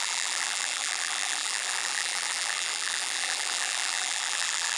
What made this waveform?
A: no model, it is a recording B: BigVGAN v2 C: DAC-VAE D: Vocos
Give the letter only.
B